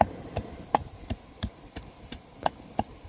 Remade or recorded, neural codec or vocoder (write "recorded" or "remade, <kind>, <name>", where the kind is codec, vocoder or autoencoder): recorded